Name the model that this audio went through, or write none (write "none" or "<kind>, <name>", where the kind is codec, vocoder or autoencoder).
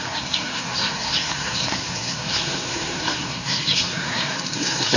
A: codec, SNAC